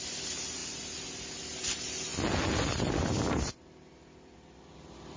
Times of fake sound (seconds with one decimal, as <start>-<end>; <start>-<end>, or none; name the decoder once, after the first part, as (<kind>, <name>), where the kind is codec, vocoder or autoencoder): none